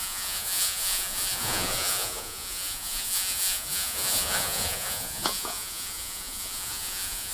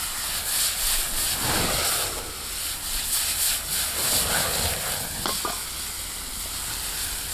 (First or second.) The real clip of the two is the second